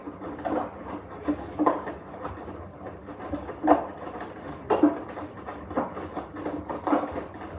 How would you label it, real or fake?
real